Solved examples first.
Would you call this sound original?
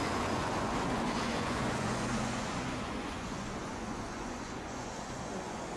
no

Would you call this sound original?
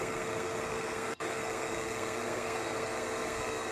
no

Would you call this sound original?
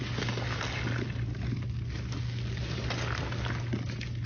yes